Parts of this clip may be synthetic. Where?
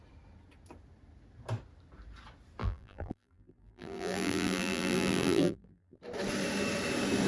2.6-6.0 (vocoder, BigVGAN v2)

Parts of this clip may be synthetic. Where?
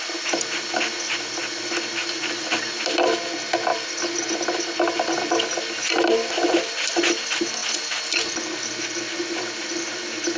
none